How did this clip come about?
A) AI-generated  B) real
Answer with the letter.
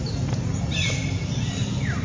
B